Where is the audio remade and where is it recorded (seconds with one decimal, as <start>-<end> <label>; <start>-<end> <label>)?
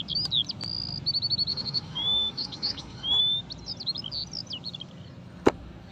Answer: 0.0-1.5 recorded; 1.5-3.2 remade; 3.2-5.9 recorded